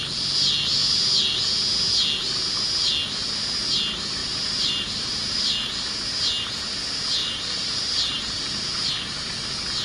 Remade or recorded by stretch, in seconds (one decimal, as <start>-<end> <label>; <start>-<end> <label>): 0.0-4.2 recorded; 4.2-5.9 remade; 5.9-7.2 recorded; 7.2-8.9 remade; 8.9-9.8 recorded